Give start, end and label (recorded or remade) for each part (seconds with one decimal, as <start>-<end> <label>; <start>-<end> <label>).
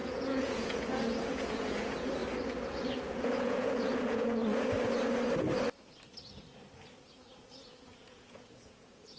0.0-2.2 remade; 2.2-3.1 recorded; 3.1-4.4 remade; 4.4-7.0 recorded; 7.0-9.2 remade